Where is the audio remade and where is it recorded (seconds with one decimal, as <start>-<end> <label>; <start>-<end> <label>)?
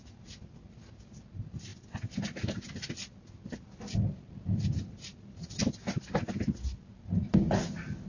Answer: 0.0-8.1 recorded